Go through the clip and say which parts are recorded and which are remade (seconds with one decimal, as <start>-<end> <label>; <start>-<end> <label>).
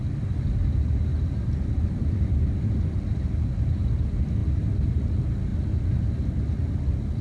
0.0-7.2 recorded